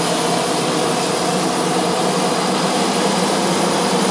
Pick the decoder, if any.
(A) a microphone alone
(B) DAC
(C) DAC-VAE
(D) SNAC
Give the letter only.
A